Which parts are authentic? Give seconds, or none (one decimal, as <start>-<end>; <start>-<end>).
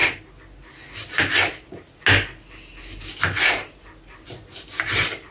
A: 0.0-5.3